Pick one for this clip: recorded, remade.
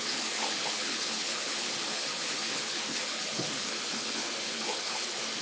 remade